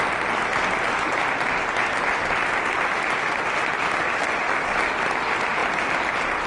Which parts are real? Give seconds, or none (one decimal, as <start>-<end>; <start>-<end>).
0.0-6.5